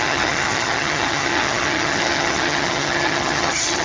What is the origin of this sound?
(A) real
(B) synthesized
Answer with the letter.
B